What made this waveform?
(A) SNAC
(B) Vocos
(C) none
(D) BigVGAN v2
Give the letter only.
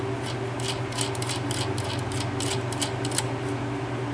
C